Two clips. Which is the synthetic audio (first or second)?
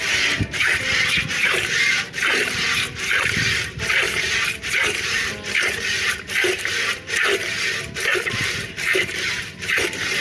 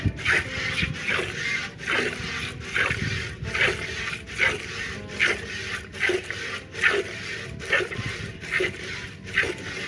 first